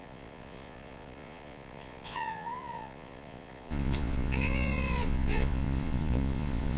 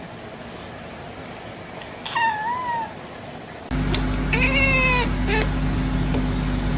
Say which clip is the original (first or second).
second